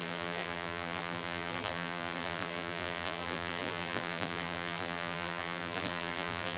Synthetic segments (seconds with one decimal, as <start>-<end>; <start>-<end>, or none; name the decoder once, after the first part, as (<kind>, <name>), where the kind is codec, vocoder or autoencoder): 0.0-6.6 (vocoder, BigVGAN v2)